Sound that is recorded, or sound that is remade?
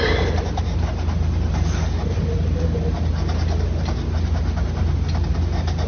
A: recorded